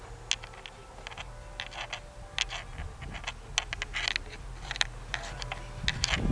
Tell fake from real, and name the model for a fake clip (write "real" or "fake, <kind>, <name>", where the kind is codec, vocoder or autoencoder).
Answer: real